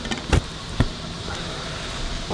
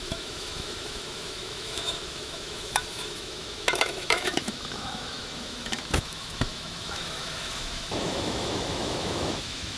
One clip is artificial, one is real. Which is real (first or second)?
first